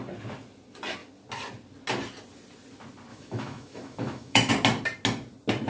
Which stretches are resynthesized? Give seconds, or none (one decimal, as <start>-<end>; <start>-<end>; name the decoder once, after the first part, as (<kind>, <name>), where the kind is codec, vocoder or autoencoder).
3.1-4.5 (autoencoder, DAC-VAE)